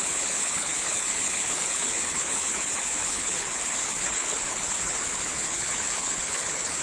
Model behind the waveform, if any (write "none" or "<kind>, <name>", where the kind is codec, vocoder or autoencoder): codec, HILCodec